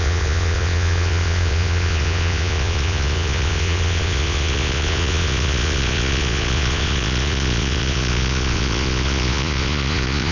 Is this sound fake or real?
fake